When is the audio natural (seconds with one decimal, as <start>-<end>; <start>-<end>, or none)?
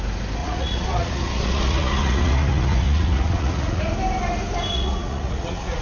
0.0-0.4; 3.8-4.7